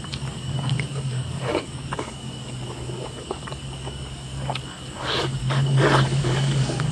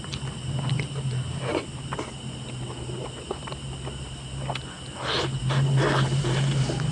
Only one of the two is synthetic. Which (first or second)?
first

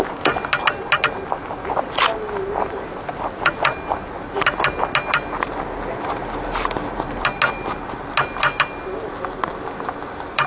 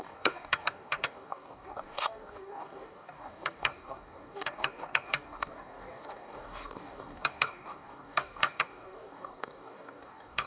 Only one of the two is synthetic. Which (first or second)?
second